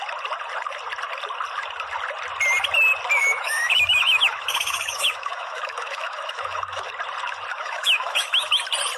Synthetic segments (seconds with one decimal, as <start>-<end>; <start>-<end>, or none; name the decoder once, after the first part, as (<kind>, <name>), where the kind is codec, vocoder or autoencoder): 3.2-6.9 (autoencoder, DAC-VAE); 7.5-8.5